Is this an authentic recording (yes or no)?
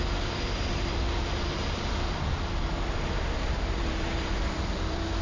no